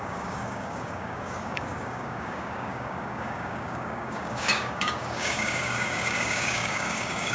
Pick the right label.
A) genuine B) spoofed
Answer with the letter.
B